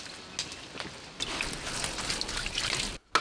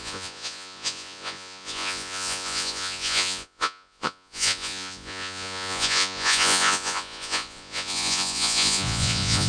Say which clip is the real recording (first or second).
first